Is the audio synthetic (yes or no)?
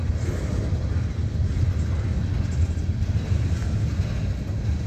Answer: no